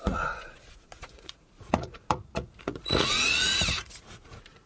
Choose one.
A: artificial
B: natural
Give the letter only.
A